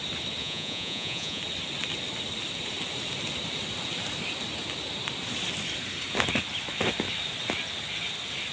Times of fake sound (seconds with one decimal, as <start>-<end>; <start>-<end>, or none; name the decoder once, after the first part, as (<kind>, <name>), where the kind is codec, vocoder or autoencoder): 0.4-1.4 (vocoder, Vocos)